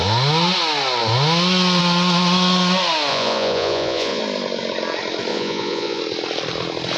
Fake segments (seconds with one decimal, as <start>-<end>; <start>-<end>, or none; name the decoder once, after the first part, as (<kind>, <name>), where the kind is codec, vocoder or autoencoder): 3.1-4.2 (vocoder, Vocos); 5.3-6.0